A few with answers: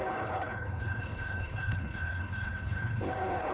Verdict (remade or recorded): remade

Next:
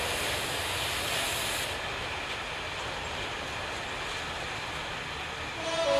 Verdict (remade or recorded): recorded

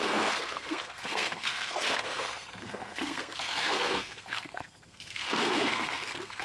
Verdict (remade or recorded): remade